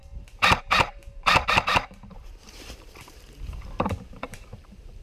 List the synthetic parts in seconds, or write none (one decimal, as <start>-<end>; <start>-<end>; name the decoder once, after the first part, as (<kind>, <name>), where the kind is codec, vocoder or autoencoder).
0.0-5.0 (vocoder, BigVGAN v2)